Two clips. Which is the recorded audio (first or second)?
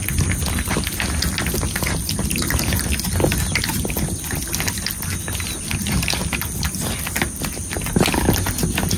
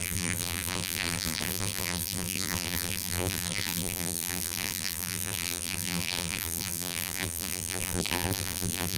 first